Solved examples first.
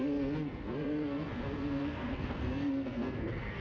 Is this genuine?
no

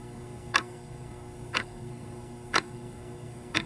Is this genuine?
no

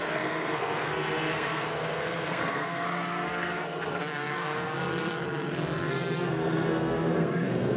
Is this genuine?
no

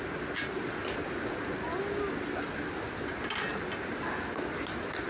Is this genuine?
yes